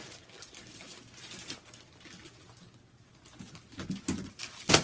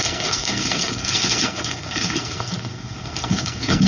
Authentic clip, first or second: first